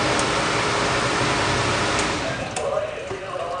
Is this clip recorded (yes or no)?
no